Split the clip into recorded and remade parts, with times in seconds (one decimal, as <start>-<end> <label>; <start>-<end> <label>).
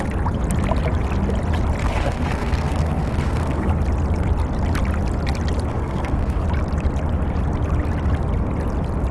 0.0-1.8 recorded; 1.8-3.7 remade; 3.7-5.7 recorded; 5.7-6.4 remade; 6.4-9.1 recorded